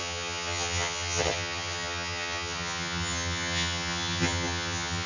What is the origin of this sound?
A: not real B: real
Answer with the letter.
A